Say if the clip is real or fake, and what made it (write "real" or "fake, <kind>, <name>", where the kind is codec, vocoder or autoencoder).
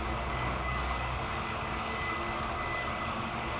fake, codec, DAC